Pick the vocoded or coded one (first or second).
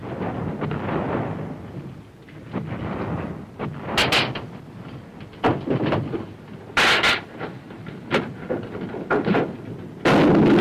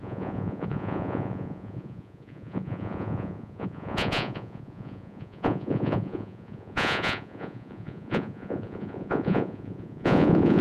second